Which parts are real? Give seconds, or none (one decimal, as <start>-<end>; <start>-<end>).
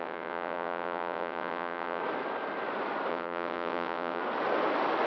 2.0-3.1; 4.2-5.1